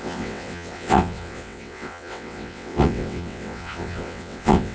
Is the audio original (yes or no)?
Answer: no